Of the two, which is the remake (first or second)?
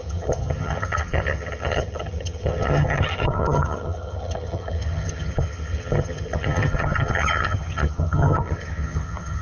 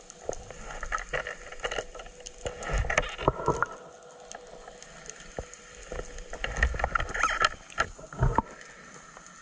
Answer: first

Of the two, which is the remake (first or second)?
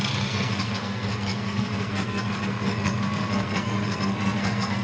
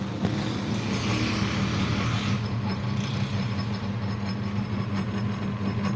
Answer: first